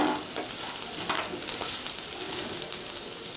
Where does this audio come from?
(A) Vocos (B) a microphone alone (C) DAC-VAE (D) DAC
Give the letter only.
B